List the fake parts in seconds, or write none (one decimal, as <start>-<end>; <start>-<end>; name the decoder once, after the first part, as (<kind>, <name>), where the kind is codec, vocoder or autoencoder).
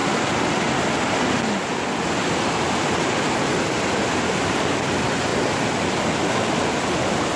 none